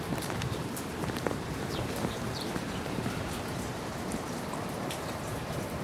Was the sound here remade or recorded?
remade